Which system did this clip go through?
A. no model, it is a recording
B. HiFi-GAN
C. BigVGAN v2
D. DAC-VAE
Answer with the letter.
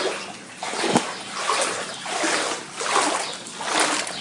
A